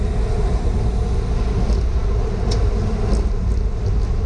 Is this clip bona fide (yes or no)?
yes